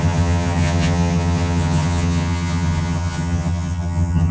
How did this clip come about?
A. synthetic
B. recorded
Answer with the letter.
A